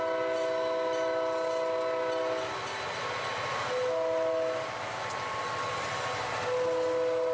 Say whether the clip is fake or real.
real